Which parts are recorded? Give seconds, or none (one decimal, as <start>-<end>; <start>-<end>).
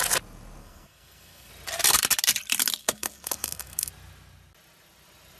0.0-0.6; 1.5-2.8; 3.9-5.4